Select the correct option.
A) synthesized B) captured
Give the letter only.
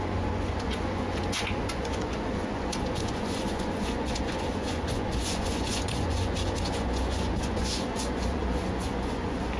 A